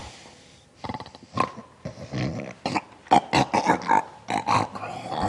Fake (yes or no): no